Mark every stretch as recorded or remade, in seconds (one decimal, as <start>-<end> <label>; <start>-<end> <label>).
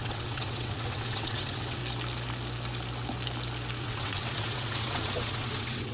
0.0-1.8 remade; 1.8-3.8 recorded; 3.8-5.9 remade